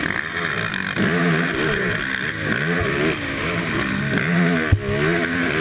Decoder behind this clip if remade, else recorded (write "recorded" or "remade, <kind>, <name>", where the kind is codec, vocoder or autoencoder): recorded